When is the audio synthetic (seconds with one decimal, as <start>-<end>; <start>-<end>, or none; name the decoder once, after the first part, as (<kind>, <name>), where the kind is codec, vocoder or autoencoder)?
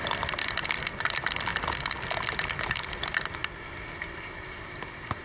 none